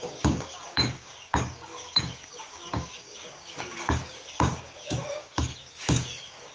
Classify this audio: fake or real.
fake